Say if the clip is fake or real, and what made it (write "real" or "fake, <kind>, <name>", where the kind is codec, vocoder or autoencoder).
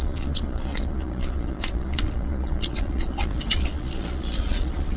fake, vocoder, Vocos